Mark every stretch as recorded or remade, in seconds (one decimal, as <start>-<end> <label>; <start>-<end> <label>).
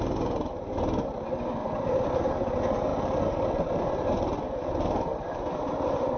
0.0-1.6 recorded; 1.6-2.3 remade; 2.3-5.1 recorded; 5.1-6.2 remade